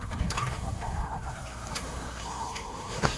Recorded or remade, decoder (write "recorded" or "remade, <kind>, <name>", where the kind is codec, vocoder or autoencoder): remade, codec, SNAC